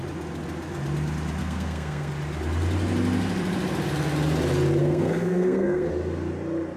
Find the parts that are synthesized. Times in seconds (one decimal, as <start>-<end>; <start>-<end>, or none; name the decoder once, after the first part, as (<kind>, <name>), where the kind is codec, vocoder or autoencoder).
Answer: 1.4-2.1 (codec, SNAC); 4.8-5.9

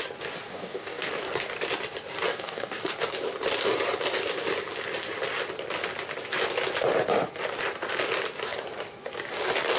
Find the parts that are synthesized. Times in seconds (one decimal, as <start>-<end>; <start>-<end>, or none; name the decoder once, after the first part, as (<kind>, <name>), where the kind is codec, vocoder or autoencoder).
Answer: 0.5-1.1 (codec, DAC); 2.3-2.8

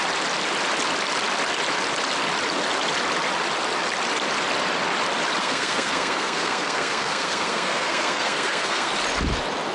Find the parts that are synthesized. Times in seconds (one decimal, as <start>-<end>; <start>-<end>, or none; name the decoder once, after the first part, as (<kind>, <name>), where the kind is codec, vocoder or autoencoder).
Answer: 5.4-8.9 (codec, SNAC)

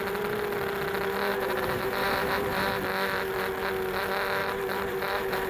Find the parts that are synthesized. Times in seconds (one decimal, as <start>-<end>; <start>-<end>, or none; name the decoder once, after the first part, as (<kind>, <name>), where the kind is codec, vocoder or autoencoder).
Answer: 1.3-2.7 (vocoder, BigVGAN v2); 4.4-5.5